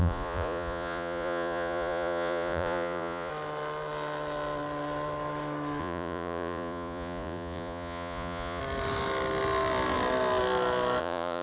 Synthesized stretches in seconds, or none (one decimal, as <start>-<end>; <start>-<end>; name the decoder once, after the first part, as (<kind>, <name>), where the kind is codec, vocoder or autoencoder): 0.0-3.3 (vocoder, Vocos); 5.8-8.6; 11.0-11.4